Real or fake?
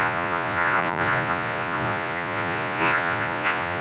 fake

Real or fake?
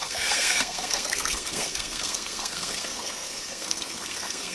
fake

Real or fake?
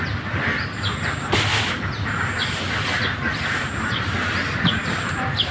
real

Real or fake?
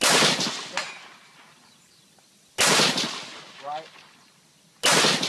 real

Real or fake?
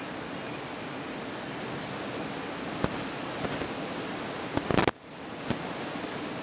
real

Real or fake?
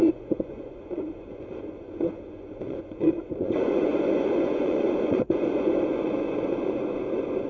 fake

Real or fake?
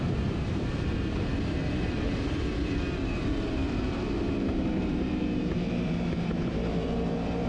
fake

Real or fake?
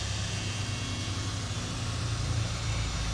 real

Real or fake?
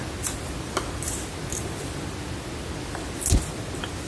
real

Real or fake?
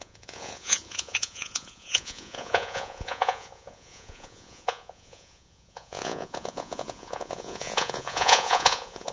fake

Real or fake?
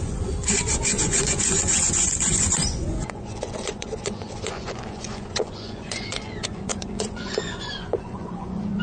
fake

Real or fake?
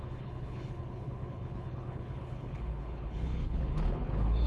fake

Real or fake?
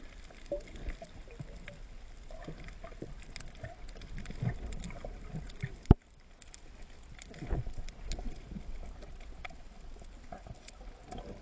real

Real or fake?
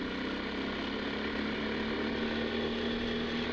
real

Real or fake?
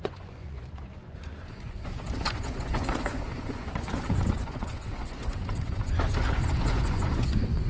fake